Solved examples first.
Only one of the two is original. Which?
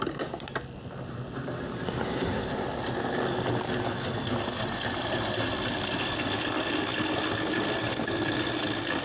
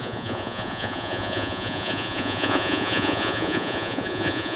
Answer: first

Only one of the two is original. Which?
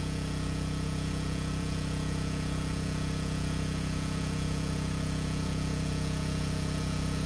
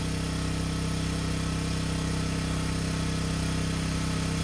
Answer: second